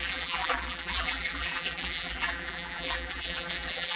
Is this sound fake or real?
fake